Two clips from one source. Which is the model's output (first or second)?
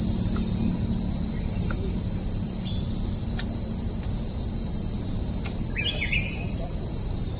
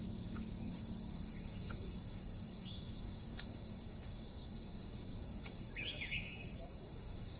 second